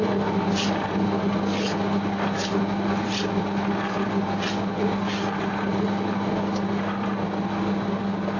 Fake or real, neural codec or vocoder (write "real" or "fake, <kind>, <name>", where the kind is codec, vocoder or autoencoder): real